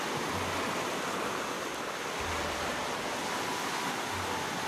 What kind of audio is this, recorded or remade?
recorded